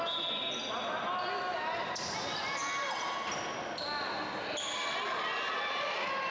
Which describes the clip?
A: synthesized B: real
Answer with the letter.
B